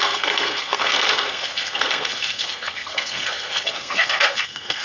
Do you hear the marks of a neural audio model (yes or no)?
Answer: yes